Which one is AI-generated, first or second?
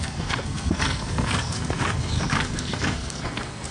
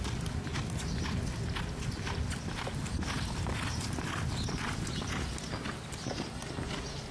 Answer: first